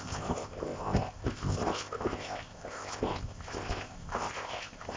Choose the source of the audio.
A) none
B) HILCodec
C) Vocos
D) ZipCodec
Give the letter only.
D